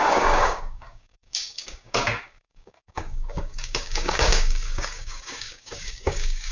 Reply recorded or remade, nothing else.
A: remade